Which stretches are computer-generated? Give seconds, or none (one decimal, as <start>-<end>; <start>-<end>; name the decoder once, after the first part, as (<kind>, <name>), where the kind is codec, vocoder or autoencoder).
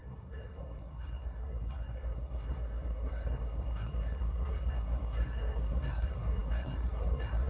0.0-7.5 (codec, SNAC)